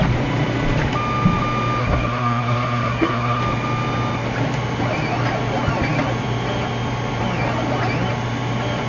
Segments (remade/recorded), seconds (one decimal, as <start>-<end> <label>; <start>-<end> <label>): 0.0-1.8 recorded; 1.8-3.4 remade; 3.4-8.9 recorded